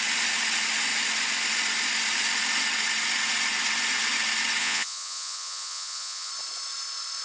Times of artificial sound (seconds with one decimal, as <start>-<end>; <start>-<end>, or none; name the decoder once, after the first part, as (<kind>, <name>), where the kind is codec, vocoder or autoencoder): 4.6-6.3 (vocoder, Vocos)